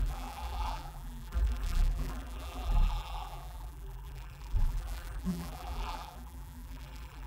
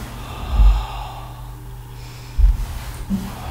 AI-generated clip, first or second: first